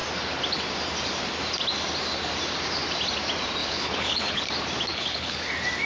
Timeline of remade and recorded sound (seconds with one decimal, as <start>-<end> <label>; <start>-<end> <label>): 0.0-3.6 recorded; 3.6-4.4 remade; 4.4-4.9 recorded; 4.9-5.5 remade; 5.5-5.9 recorded